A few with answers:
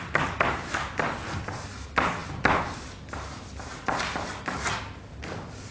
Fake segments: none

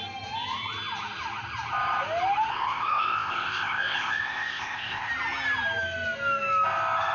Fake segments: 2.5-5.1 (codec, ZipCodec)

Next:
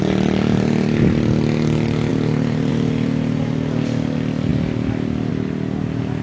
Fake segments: none